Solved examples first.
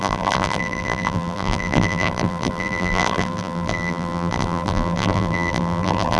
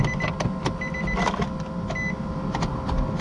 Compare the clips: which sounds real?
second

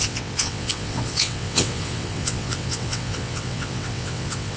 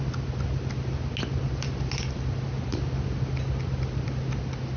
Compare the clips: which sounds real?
second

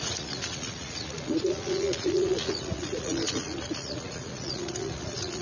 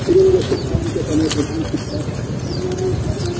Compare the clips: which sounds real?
second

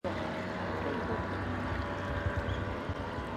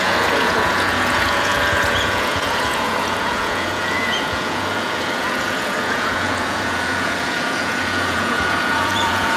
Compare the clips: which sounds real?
first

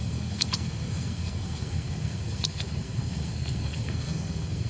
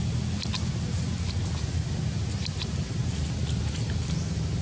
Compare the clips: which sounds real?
second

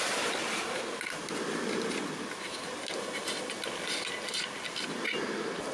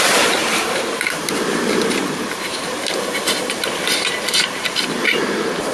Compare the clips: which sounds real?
first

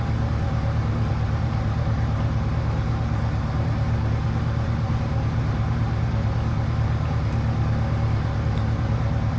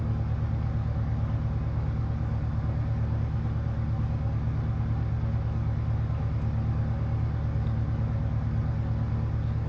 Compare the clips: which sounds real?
second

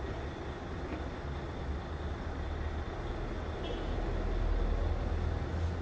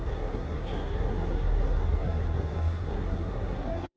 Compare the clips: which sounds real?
first